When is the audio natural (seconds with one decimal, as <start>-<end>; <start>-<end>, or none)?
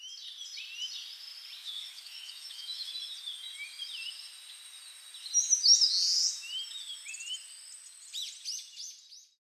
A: 0.0-1.6; 2.9-9.5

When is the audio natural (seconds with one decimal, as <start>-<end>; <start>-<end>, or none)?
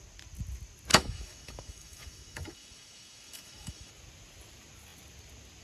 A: 0.0-0.9; 3.9-5.6